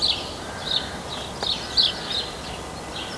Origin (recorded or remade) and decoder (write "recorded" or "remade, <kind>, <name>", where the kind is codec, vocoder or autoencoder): recorded